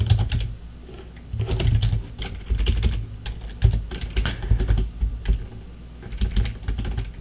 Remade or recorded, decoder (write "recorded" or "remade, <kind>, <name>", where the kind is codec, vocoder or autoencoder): recorded